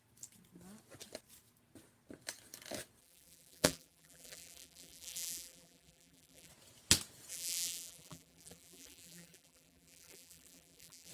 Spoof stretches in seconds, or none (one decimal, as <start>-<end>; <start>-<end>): 3.0-6.5; 7.3-11.1